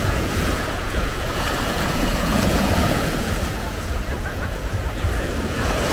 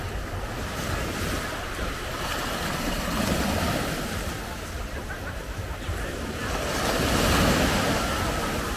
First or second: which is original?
second